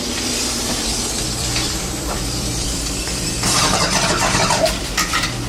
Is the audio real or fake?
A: fake